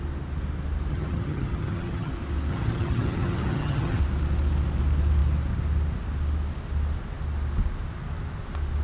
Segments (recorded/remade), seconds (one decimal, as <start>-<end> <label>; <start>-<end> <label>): 0.0-0.9 recorded; 0.9-2.1 remade; 2.1-2.5 recorded; 2.5-4.0 remade; 4.0-8.8 recorded